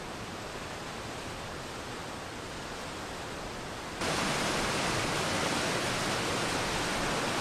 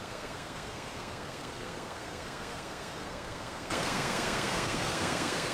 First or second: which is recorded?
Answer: first